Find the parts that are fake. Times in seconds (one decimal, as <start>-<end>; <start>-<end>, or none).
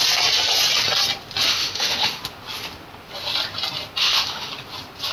1.5-2.2; 4.0-4.5